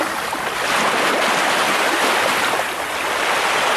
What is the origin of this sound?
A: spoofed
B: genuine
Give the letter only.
B